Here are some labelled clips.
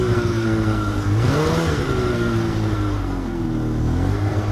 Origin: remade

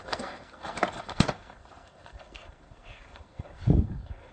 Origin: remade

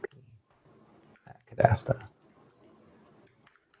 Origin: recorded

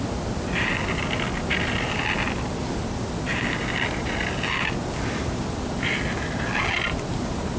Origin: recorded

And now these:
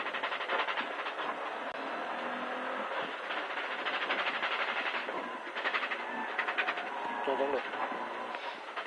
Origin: recorded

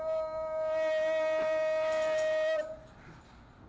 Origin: recorded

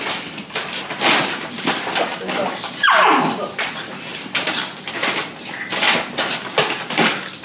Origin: recorded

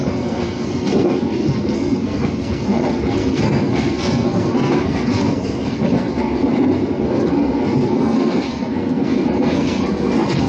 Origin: remade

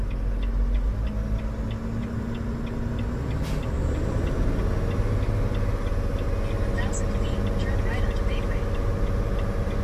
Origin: recorded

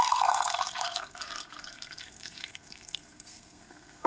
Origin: remade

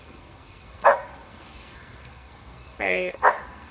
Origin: remade